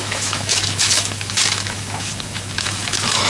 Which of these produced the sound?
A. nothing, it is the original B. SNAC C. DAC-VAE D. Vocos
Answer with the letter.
C